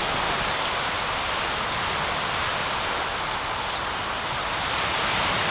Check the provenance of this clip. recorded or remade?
recorded